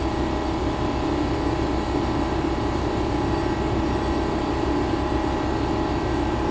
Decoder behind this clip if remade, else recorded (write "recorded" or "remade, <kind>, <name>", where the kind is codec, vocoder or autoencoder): recorded